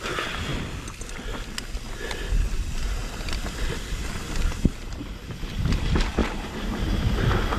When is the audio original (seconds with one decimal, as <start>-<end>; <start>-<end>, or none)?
0.0-6.2; 6.8-7.6